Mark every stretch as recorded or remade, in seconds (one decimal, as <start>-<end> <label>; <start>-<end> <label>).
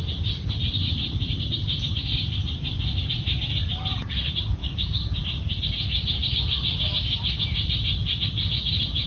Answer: 0.0-4.6 recorded; 4.6-5.2 remade; 5.2-9.1 recorded